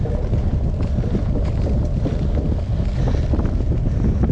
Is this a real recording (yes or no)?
yes